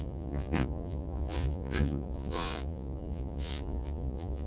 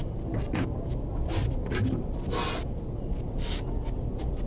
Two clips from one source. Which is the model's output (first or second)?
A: first